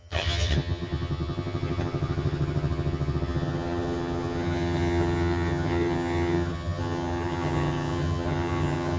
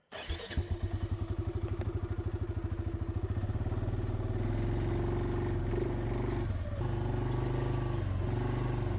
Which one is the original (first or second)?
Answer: second